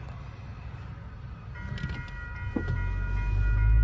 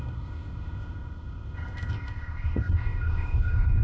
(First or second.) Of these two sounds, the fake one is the second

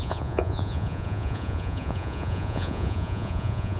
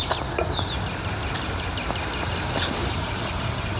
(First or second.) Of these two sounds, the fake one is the first